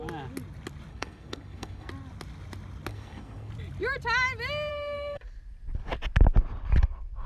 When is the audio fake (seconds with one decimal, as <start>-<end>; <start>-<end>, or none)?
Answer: 0.9-1.9; 2.9-3.5; 4.7-5.2